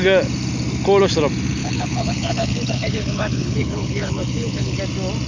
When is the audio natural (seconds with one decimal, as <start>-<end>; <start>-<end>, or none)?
0.0-1.6; 4.8-5.3